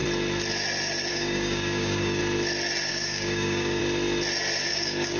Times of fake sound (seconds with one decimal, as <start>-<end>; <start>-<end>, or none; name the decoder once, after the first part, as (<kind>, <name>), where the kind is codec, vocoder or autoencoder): 1.1-2.2 (codec, DAC); 2.9-3.8; 4.7-5.2